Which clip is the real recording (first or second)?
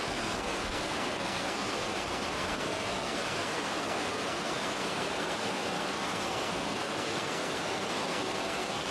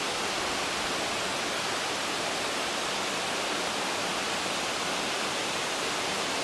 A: second